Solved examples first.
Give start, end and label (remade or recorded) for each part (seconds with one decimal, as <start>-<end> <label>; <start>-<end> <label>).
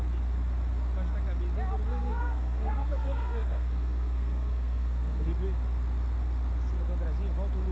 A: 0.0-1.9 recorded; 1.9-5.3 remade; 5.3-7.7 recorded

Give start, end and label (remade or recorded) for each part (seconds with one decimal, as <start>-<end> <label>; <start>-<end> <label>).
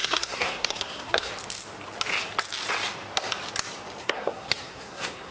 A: 0.0-1.3 remade; 1.3-4.0 recorded; 4.0-5.3 remade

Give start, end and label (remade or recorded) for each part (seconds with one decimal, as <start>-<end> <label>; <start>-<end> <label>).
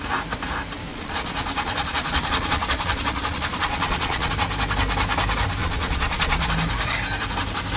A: 0.0-0.9 recorded; 0.9-4.3 remade; 4.3-5.6 recorded; 5.6-6.5 remade; 6.5-7.8 recorded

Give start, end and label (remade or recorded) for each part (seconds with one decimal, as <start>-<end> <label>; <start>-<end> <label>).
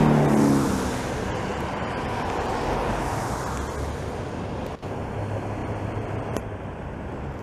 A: 0.0-1.5 recorded; 1.5-3.1 remade; 3.1-5.6 recorded; 5.6-6.5 remade; 6.5-7.4 recorded